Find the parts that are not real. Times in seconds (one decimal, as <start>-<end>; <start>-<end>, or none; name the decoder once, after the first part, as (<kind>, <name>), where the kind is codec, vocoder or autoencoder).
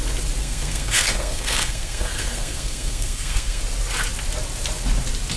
0.4-3.6 (codec, SNAC)